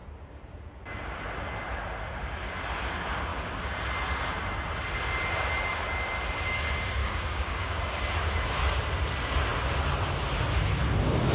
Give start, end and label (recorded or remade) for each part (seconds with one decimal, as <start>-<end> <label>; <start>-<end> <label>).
0.0-7.0 recorded; 7.0-7.7 remade; 7.7-11.3 recorded